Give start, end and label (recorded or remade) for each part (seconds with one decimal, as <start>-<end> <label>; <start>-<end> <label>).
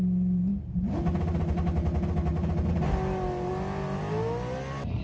0.0-5.0 recorded